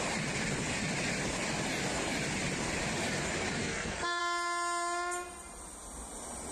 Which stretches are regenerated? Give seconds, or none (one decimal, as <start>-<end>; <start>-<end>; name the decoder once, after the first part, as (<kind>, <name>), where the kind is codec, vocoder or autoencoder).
3.6-4.2 (codec, SNAC)